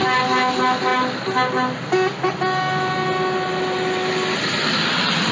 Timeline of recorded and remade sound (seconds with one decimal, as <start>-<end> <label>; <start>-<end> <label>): 0.0-5.3 recorded